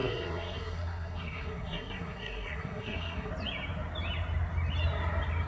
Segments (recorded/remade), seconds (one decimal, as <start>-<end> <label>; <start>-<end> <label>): 0.0-3.3 remade; 3.3-5.5 recorded